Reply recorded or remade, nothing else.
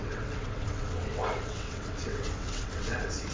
remade